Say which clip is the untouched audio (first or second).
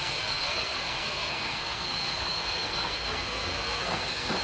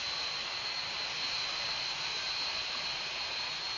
second